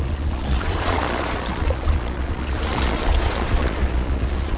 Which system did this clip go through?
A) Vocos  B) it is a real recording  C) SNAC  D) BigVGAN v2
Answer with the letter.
A